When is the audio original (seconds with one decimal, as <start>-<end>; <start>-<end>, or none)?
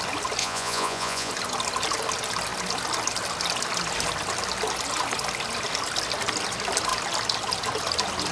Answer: 0.0-0.4; 1.3-8.3